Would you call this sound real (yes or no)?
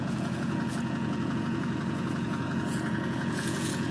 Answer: no